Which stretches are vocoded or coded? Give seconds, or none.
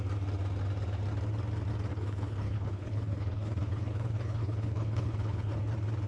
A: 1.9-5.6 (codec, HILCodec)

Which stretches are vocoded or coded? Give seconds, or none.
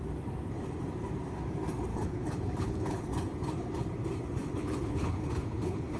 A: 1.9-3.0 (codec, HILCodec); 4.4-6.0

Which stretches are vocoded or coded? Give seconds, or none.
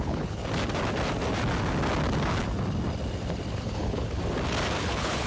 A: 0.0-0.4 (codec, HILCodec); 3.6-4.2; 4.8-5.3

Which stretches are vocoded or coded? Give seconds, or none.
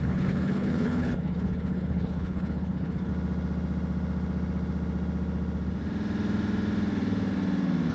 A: 0.0-3.1 (codec, HILCodec)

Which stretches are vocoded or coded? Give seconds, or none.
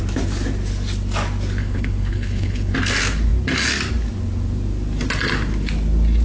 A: 1.6-2.7 (codec, HILCodec)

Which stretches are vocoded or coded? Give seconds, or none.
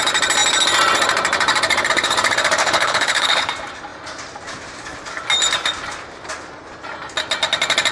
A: 2.6-3.5 (codec, HILCodec)